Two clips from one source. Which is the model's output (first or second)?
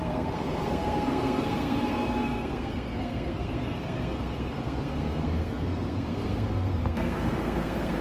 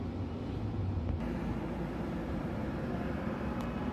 first